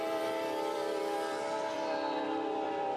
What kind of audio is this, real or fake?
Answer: fake